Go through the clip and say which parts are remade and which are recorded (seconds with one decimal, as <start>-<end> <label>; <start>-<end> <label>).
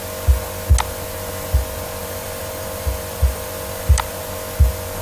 0.0-2.0 recorded; 2.0-4.2 remade; 4.2-5.0 recorded